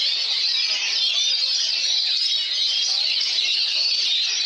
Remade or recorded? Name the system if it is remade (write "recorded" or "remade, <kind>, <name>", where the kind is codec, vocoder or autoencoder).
recorded